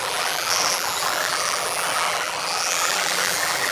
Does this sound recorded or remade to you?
remade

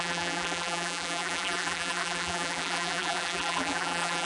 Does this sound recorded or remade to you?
remade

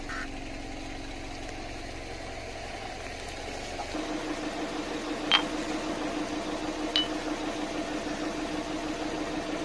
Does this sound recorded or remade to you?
recorded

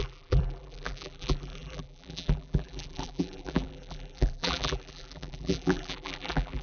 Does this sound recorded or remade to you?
remade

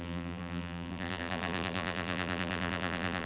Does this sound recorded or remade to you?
remade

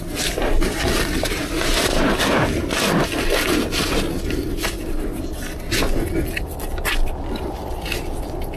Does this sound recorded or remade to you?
recorded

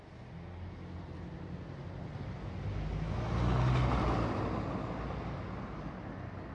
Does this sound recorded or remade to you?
recorded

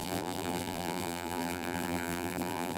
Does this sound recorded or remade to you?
remade